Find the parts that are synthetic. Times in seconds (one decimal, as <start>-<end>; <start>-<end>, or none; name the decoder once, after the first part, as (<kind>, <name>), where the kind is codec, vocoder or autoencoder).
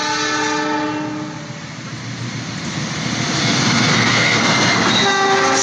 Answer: 3.9-4.7 (codec, SNAC)